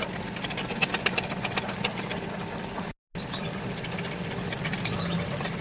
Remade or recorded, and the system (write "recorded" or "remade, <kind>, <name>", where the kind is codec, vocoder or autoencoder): recorded